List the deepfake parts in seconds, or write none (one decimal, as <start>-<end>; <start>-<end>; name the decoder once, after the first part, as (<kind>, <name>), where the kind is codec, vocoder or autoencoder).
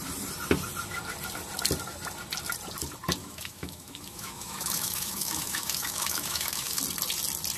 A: 3.2-6.8 (autoencoder, DAC-VAE)